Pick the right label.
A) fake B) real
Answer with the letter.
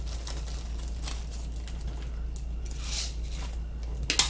B